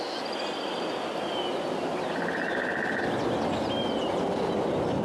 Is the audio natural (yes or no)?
yes